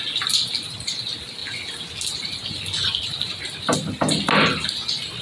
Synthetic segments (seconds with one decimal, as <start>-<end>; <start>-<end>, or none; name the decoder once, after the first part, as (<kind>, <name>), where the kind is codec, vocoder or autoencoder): none

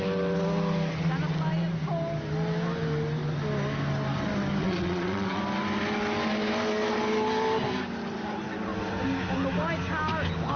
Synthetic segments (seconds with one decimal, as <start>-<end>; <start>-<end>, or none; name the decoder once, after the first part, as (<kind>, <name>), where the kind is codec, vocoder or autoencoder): 4.6-5.4 (vocoder, WaveNeXt)

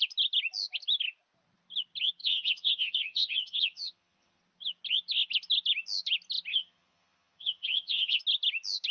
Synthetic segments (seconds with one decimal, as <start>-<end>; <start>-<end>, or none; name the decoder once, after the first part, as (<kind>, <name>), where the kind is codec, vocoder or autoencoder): 2.2-4.4 (vocoder, HiFi-GAN); 6.5-8.2

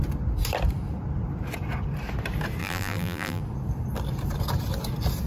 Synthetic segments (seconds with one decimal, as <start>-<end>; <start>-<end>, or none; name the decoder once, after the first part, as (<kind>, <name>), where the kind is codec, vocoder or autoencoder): 2.6-3.4 (vocoder, BigVGAN v2)

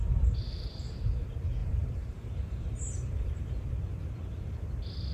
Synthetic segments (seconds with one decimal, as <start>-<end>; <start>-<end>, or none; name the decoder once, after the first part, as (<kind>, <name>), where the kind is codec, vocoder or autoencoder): 1.6-3.3 (vocoder, BigVGAN v2)

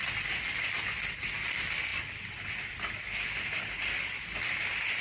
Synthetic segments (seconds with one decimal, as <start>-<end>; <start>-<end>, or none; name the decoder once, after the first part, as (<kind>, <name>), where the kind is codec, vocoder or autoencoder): none